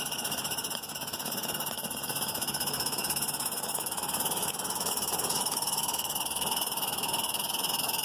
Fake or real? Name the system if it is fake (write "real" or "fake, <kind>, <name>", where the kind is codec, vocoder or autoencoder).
fake, autoencoder, DAC-VAE